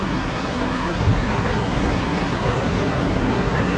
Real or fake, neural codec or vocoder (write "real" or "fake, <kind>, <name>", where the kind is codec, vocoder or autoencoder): fake, codec, SNAC